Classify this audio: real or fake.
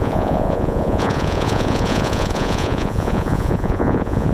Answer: fake